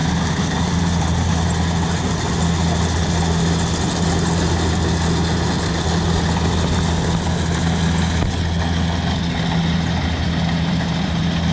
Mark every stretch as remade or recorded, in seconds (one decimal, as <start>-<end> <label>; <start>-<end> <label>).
0.0-1.3 remade; 1.3-11.5 recorded